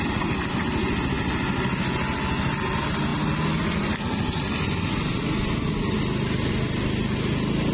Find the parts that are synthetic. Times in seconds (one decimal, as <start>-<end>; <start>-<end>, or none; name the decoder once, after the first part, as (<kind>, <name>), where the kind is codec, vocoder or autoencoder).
none